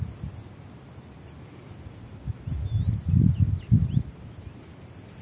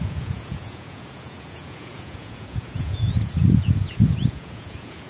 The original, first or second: first